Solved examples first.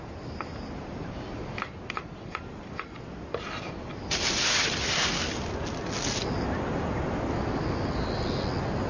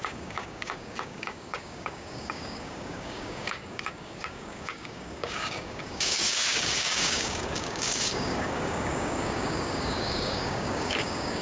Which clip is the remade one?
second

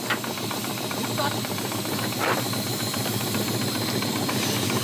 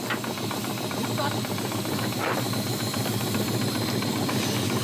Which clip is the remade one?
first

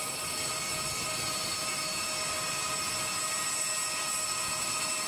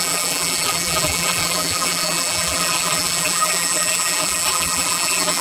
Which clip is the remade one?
second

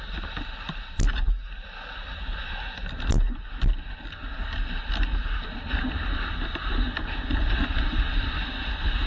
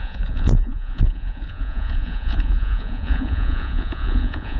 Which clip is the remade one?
second